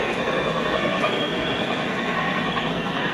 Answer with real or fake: fake